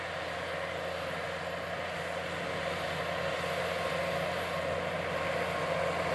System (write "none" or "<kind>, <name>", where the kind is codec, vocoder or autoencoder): none